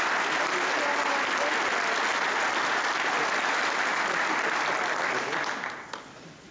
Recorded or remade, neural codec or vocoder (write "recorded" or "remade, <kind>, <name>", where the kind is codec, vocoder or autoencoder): recorded